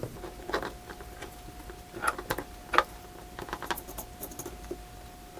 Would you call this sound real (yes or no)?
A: yes